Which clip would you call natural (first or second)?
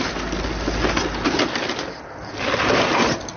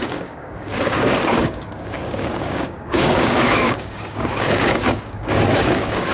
first